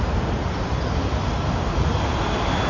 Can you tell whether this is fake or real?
real